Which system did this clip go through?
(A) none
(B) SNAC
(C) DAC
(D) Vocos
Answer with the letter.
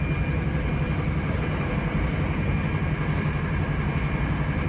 A